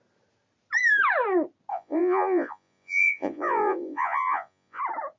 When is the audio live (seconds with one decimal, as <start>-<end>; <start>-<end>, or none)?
0.0-1.7; 4.8-5.2